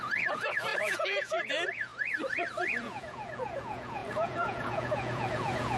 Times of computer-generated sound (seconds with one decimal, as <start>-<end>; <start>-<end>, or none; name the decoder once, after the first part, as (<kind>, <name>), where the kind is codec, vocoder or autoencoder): 0.0-1.9 (vocoder, Vocos); 2.8-5.8